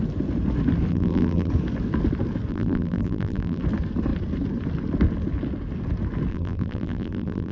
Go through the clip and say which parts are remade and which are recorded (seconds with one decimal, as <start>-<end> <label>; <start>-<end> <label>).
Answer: 0.0-0.9 recorded; 0.9-1.5 remade; 1.5-2.5 recorded; 2.5-3.6 remade; 3.6-6.3 recorded; 6.3-7.5 remade